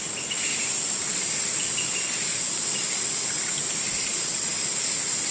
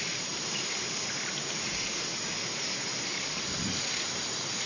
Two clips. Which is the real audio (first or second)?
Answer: first